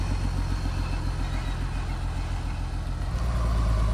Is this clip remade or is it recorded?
recorded